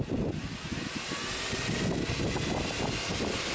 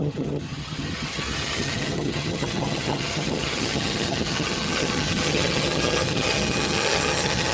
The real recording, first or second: first